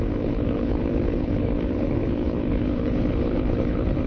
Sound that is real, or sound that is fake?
fake